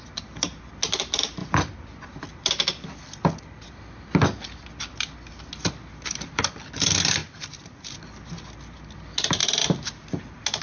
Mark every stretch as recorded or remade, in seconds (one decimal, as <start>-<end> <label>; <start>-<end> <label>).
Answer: 0.0-10.6 recorded